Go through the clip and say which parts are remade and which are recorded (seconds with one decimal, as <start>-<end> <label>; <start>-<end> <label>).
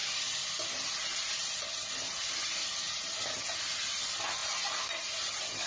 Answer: 0.0-5.7 recorded